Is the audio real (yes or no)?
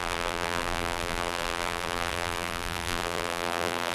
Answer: no